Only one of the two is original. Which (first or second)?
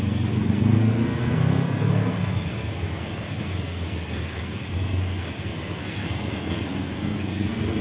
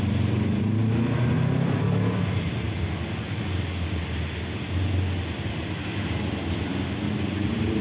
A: second